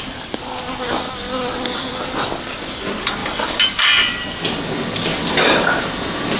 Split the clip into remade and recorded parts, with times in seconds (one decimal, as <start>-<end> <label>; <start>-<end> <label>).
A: 0.0-6.4 recorded